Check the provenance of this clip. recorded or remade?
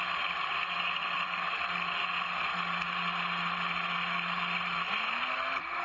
recorded